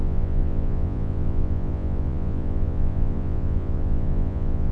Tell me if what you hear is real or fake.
fake